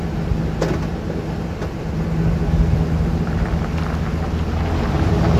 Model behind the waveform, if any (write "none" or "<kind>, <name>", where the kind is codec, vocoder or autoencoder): none